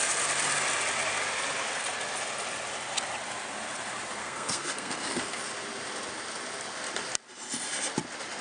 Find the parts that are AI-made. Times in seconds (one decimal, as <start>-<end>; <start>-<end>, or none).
4.2-5.4